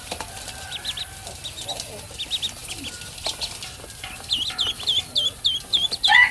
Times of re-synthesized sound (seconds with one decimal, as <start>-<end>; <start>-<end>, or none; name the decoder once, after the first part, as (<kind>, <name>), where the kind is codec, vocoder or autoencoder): none